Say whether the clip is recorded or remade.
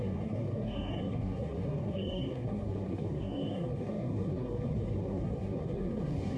remade